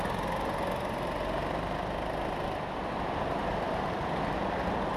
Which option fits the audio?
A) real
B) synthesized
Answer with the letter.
A